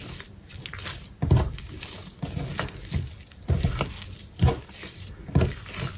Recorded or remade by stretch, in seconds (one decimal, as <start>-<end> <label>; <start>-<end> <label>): 0.0-6.0 recorded